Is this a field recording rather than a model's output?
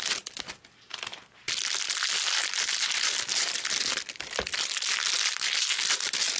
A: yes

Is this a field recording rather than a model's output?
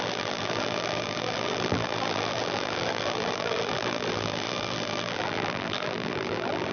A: no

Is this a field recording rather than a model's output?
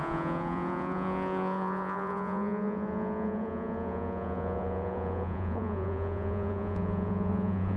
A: no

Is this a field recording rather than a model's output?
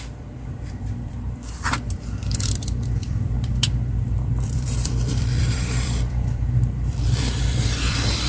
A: no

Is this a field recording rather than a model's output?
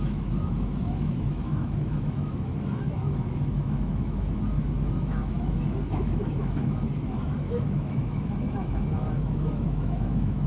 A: no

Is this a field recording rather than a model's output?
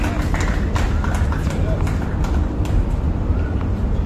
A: yes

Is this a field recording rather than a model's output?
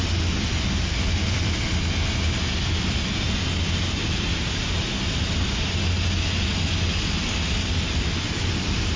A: yes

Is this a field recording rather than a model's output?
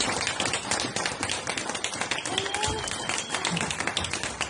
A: yes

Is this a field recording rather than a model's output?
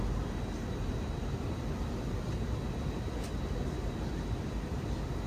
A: yes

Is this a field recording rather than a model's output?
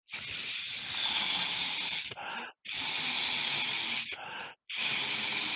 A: yes